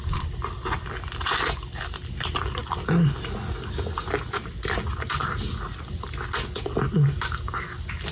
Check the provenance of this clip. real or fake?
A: real